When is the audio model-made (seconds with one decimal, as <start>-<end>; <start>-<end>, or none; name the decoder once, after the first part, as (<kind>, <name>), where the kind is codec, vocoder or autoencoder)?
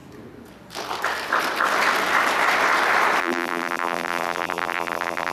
3.2-5.3 (vocoder, BigVGAN v2)